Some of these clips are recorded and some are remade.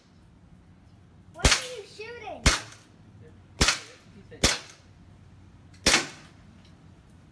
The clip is recorded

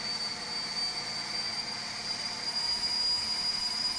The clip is recorded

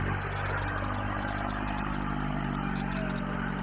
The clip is recorded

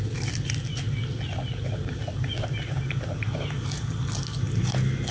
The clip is recorded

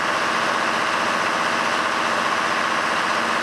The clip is recorded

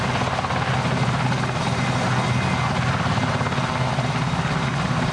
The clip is recorded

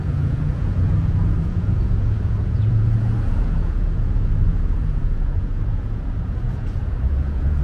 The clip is remade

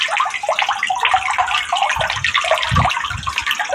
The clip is recorded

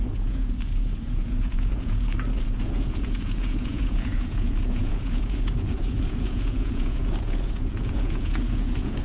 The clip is remade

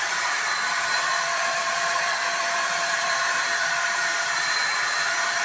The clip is remade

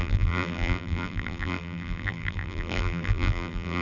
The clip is remade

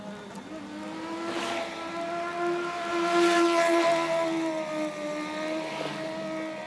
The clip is recorded